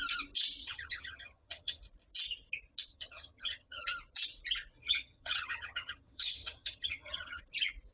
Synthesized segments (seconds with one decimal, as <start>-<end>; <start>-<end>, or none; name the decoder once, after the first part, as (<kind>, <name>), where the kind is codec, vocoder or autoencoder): 0.6-1.8 (vocoder, HiFi-GAN); 2.9-3.8; 4.8-7.4